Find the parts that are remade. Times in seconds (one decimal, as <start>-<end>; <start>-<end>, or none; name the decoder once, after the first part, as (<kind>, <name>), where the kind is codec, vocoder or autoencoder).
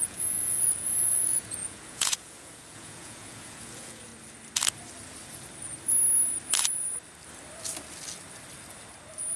0.0-4.1 (vocoder, Vocos)